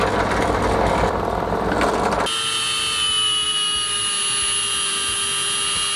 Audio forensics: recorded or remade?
recorded